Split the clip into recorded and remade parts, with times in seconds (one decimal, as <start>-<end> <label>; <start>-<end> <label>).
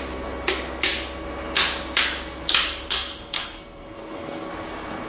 0.0-2.9 recorded; 2.9-4.5 remade; 4.5-5.1 recorded